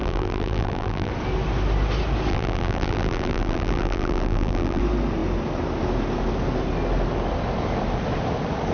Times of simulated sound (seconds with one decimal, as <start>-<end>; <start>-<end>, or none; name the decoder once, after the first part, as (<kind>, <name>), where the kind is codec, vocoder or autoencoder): 0.0-1.1 (vocoder, BigVGAN v2); 2.3-4.8